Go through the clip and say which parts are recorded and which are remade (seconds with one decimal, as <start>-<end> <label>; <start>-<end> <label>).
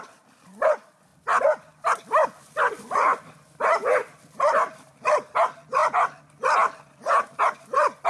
0.0-8.1 recorded